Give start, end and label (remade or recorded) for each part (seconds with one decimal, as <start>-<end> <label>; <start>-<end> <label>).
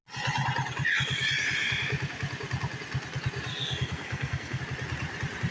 0.0-3.5 recorded; 3.5-4.6 remade; 4.6-5.5 recorded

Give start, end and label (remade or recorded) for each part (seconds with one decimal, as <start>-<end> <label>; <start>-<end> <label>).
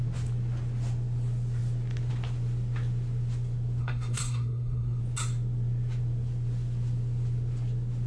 0.0-3.8 recorded; 3.8-5.0 remade; 5.0-8.1 recorded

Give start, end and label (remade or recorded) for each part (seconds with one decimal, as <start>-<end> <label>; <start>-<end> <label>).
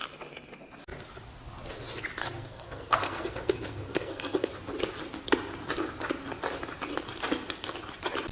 0.0-2.2 recorded; 2.2-4.5 remade; 4.5-8.3 recorded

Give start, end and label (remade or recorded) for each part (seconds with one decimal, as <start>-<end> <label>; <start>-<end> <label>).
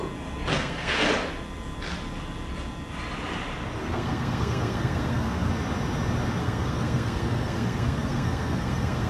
0.0-0.5 recorded; 0.5-1.0 remade; 1.0-3.8 recorded; 3.8-5.5 remade; 5.5-6.4 recorded; 6.4-9.1 remade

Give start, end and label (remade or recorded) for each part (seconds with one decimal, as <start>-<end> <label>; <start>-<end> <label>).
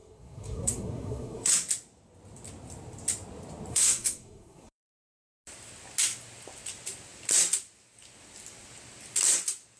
0.0-1.5 remade; 1.5-3.7 recorded; 3.7-5.3 remade; 5.3-9.8 recorded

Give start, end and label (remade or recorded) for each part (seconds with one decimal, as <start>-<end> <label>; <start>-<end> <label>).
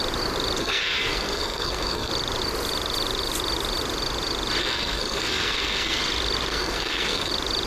0.0-0.6 recorded; 0.6-2.1 remade; 2.1-4.6 recorded; 4.6-6.0 remade; 6.0-6.5 recorded; 6.5-7.3 remade; 7.3-7.7 recorded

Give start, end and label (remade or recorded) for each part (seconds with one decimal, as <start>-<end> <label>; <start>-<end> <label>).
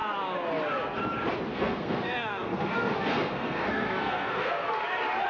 0.0-1.5 recorded; 1.5-4.7 remade; 4.7-5.3 recorded